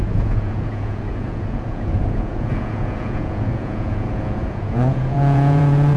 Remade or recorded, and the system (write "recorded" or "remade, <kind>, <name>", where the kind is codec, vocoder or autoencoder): remade, vocoder, Vocos